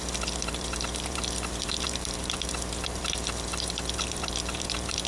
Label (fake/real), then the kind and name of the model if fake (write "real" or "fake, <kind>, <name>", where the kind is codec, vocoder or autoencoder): fake, vocoder, BigVGAN v2